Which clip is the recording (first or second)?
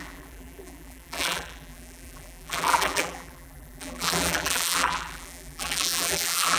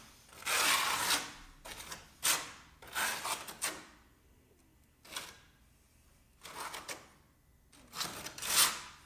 second